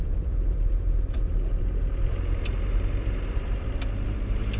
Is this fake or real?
fake